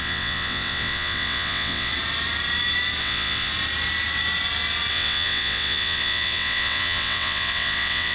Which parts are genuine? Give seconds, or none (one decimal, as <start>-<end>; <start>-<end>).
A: 1.9-3.0; 3.5-4.9

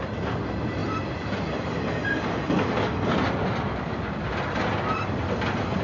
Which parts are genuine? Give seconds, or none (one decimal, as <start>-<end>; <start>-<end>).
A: 0.0-5.8